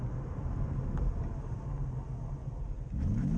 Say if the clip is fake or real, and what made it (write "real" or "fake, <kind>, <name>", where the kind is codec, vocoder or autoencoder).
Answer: real